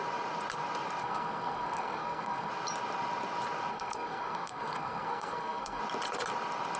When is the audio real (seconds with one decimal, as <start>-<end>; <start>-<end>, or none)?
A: 0.0-1.0; 2.5-3.7; 5.8-6.8